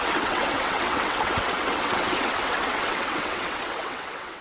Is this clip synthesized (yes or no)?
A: yes